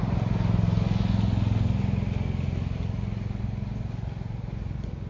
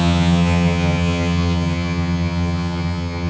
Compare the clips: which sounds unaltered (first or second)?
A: first